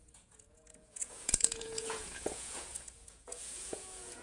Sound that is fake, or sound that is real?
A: fake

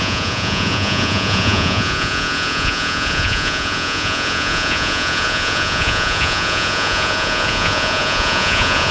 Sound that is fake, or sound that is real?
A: fake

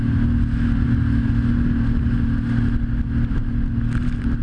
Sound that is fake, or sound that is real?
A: real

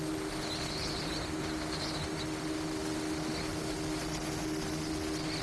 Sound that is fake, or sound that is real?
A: real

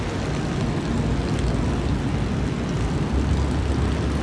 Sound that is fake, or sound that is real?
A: real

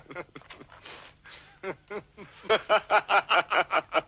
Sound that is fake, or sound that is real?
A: real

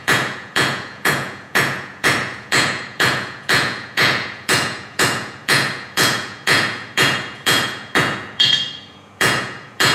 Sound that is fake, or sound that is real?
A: fake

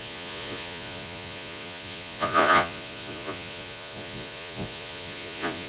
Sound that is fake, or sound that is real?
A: fake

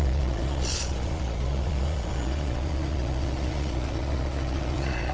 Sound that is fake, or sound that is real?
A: fake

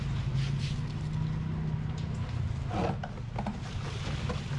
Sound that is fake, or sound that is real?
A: real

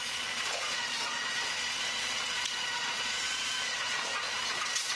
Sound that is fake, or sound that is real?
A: fake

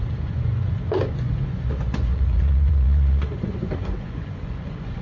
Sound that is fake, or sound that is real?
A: fake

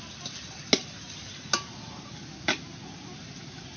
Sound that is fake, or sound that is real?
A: real